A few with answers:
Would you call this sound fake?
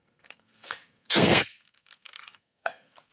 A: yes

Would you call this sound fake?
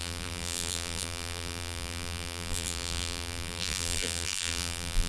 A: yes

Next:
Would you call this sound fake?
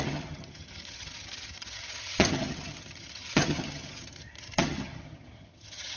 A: yes